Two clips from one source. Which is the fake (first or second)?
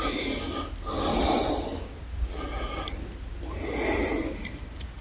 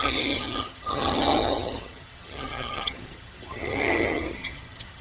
second